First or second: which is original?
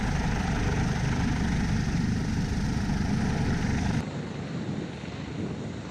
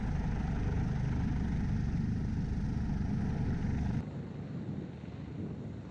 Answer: second